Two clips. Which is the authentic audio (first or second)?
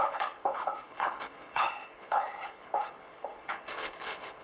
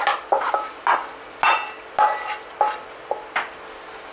second